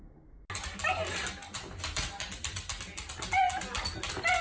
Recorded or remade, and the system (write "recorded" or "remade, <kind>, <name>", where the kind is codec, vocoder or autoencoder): recorded